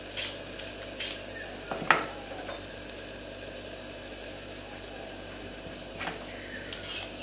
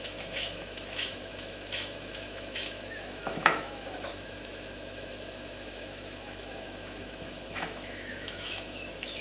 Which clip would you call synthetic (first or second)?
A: second